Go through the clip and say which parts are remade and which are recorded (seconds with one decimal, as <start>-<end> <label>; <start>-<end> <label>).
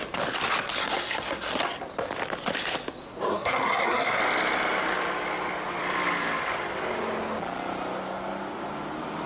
0.0-0.8 recorded; 0.8-1.5 remade; 1.5-3.3 recorded; 3.3-4.2 remade; 4.2-9.3 recorded